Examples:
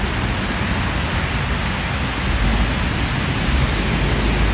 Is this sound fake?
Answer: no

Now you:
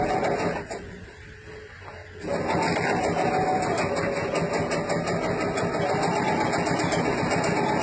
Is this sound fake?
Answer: no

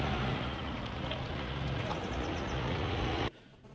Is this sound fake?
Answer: yes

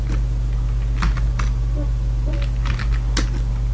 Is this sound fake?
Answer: no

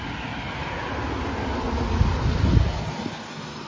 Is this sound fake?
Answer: no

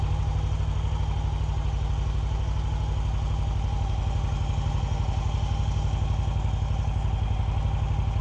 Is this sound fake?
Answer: no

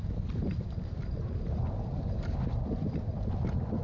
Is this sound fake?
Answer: no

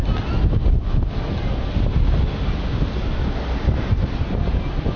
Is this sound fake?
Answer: no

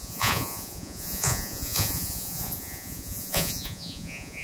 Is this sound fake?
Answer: yes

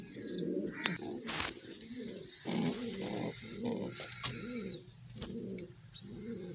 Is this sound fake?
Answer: no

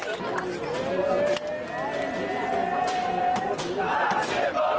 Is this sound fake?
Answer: no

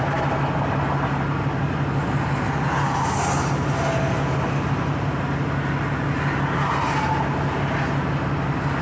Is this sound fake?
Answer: no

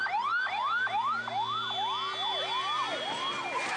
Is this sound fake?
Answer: no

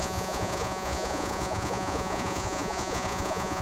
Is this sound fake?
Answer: yes